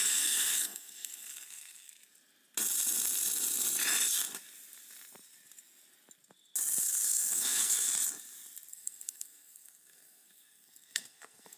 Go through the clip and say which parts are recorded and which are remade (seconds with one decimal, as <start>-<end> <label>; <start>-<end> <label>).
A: 0.0-1.9 remade; 1.9-6.8 recorded; 6.8-7.9 remade; 7.9-8.7 recorded; 8.7-11.6 remade